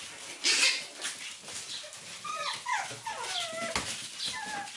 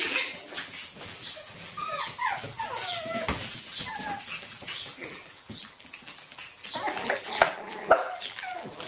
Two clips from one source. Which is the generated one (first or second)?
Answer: second